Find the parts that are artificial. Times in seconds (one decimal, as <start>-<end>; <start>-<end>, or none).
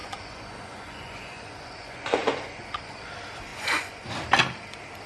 0.0-3.1; 3.5-4.1